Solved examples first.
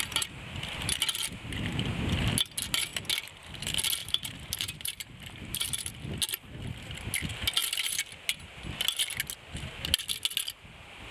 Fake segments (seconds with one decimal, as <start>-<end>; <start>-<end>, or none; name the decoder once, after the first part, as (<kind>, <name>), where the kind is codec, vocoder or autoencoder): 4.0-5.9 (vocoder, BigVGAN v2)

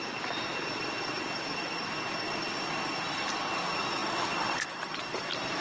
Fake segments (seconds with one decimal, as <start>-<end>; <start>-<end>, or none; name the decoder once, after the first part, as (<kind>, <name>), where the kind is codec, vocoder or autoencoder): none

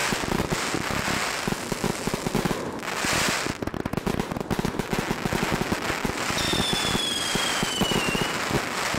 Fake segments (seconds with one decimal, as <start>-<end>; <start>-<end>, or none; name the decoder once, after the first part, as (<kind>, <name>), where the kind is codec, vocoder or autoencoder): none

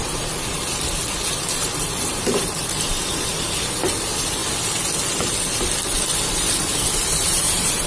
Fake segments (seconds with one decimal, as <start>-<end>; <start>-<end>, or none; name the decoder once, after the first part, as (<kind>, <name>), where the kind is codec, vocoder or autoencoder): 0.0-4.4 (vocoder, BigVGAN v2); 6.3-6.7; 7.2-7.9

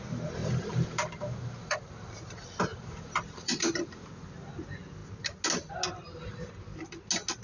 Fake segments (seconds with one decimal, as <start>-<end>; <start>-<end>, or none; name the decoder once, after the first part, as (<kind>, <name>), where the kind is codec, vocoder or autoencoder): 0.4-1.9 (vocoder, BigVGAN v2); 2.7-4.1